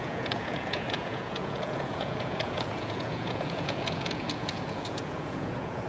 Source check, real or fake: fake